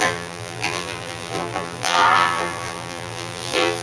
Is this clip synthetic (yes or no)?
yes